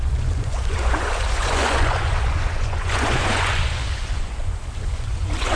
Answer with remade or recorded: remade